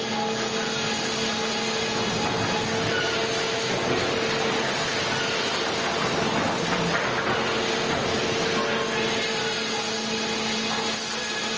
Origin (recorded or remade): recorded